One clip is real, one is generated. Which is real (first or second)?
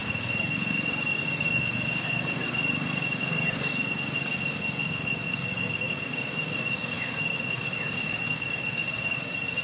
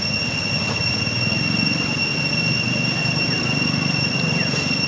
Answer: second